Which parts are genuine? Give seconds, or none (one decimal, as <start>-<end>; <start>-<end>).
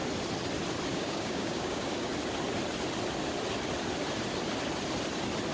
0.0-0.9; 2.1-5.5